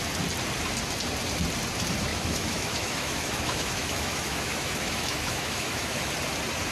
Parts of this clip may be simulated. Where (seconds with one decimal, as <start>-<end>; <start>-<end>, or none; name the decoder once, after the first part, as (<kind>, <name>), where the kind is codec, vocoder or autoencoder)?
2.1-6.1 (autoencoder, DAC-VAE)